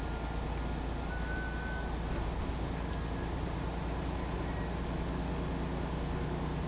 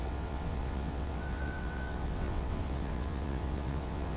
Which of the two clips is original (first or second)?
first